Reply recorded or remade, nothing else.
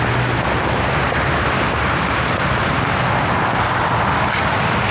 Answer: recorded